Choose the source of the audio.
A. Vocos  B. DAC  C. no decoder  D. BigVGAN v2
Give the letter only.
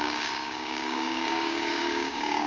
B